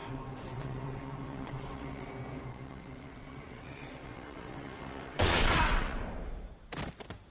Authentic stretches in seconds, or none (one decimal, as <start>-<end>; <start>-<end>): 2.1-2.5; 6.0-7.3

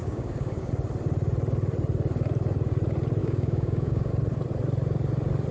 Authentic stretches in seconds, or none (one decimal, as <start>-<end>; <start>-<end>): 0.7-3.2; 4.1-5.5

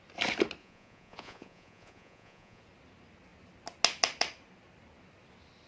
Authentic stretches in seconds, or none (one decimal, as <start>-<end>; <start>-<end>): 0.0-0.6; 2.6-5.7

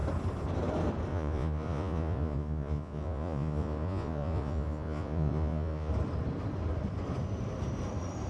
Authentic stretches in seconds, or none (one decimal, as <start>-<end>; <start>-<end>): 0.0-1.1; 5.9-8.3

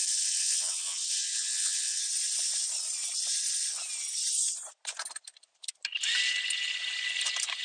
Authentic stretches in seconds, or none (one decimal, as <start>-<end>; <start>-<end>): 2.0-7.6

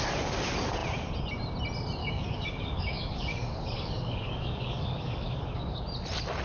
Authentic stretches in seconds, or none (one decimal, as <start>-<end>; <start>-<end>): 0.0-2.0; 5.8-6.4

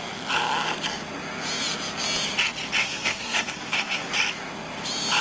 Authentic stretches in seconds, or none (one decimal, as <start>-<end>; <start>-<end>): 0.0-2.8; 4.1-5.2